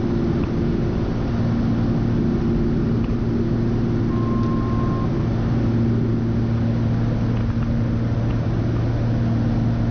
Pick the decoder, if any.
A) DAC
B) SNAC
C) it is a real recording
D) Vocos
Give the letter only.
C